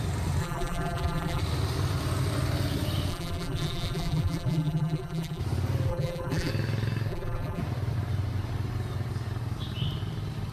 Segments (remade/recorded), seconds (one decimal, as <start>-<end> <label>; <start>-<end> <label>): 0.0-0.4 recorded; 0.4-1.4 remade; 1.4-3.1 recorded; 3.1-5.4 remade; 5.4-5.9 recorded; 5.9-6.5 remade; 6.5-7.1 recorded; 7.1-7.6 remade; 7.6-10.5 recorded